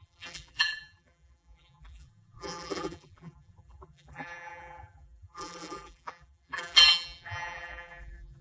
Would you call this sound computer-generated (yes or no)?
yes